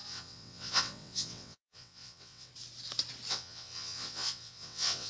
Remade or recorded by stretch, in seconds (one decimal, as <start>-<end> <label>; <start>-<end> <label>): 0.0-2.5 remade; 2.5-3.3 recorded; 3.3-5.1 remade